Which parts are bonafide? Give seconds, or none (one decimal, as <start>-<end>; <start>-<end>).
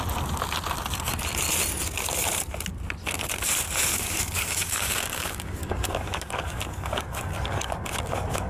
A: 0.0-3.9